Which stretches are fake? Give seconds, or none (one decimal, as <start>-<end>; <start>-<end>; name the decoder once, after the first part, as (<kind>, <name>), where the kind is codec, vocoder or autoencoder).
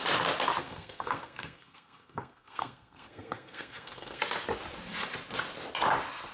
0.6-4.2 (codec, SNAC)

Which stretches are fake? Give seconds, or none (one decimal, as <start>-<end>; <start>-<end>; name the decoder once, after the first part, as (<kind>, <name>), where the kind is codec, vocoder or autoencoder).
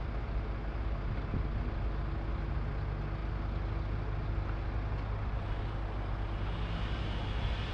none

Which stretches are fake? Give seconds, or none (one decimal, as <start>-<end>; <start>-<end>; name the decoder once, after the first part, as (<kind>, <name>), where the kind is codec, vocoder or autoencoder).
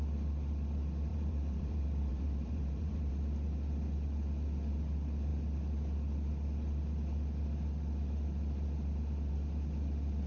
1.1-3.1 (vocoder, BigVGAN v2)